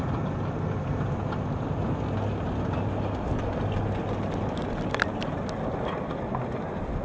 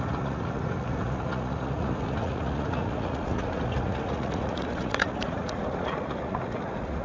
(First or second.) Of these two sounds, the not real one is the second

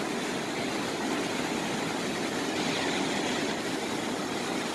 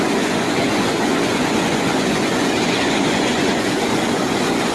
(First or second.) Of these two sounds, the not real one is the second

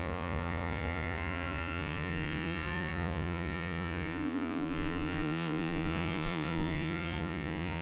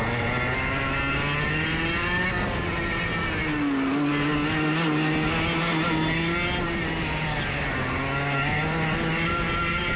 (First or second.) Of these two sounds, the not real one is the first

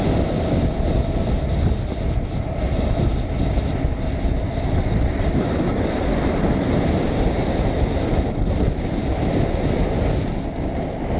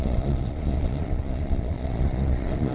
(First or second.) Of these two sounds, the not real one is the second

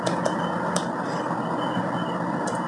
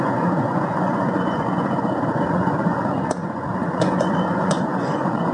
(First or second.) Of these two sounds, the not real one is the second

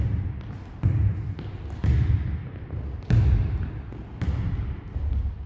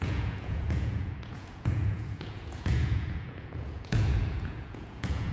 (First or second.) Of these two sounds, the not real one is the second